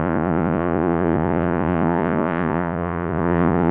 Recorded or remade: remade